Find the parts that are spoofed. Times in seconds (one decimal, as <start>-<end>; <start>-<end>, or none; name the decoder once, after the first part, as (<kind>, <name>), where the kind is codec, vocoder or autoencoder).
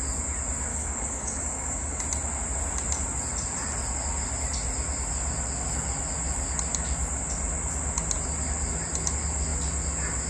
0.7-2.0 (codec, DAC)